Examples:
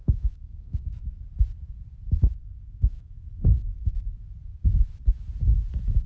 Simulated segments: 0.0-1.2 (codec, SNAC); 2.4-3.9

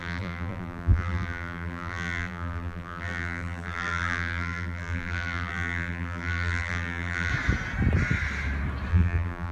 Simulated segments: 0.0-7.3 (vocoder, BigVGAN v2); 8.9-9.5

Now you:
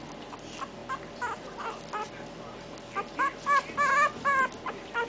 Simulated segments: none

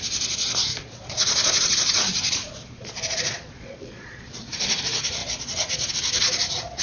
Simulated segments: 0.7-4.8 (vocoder, Vocos); 5.2-5.9

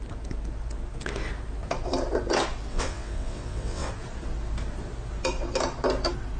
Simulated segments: 2.7-3.9 (vocoder, WaveNeXt)